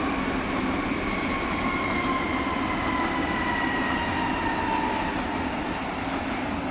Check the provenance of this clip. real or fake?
real